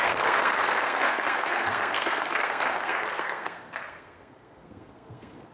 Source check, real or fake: fake